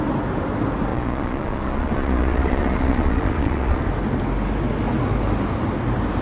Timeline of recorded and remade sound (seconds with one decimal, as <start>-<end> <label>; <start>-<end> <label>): 0.0-0.9 recorded; 0.9-3.8 remade; 3.8-6.2 recorded